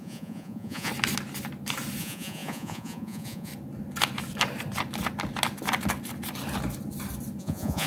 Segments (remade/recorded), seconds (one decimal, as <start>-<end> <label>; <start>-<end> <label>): 0.0-0.9 remade; 0.9-2.0 recorded; 2.0-3.5 remade; 3.5-7.4 recorded; 7.4-7.9 remade